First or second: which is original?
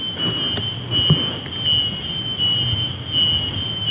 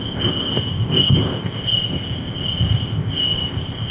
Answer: first